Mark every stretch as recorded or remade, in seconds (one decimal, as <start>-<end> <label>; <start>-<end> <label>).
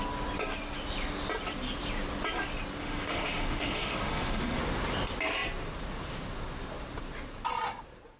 0.0-2.8 recorded; 2.8-4.6 remade; 4.6-8.2 recorded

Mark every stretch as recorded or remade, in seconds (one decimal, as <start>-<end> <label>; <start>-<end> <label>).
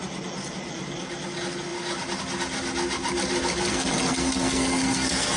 0.0-3.7 recorded; 3.7-5.4 remade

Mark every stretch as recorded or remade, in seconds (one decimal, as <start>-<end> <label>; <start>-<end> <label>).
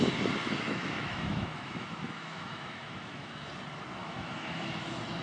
0.0-0.4 recorded; 0.4-3.5 remade; 3.5-4.0 recorded; 4.0-4.8 remade; 4.8-5.2 recorded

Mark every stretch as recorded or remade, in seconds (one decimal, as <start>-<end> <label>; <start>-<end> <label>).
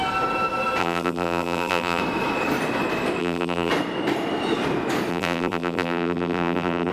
0.0-0.8 recorded; 0.8-2.0 remade; 2.0-3.2 recorded; 3.2-3.7 remade; 3.7-5.1 recorded; 5.1-6.9 remade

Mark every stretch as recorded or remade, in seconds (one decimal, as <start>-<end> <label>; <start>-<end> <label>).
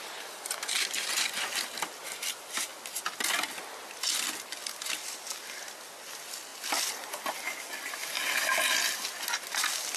0.0-10.0 recorded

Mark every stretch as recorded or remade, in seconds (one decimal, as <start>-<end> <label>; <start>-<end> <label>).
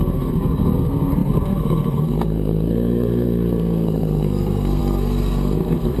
0.0-6.0 remade